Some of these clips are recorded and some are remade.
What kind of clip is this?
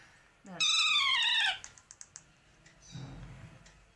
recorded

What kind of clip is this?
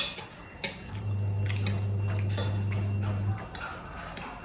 recorded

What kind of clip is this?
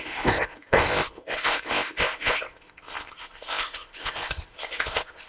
remade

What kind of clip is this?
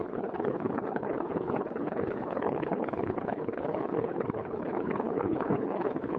remade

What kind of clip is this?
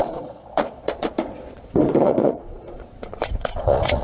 remade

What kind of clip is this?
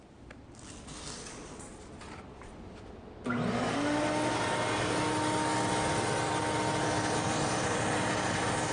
recorded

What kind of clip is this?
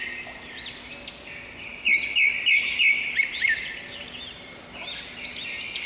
recorded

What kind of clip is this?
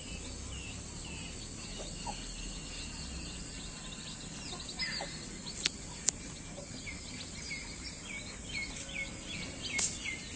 recorded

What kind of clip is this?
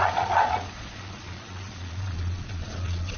remade